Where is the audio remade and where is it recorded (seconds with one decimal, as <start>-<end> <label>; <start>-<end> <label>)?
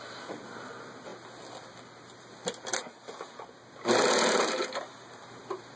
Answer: 0.0-5.8 recorded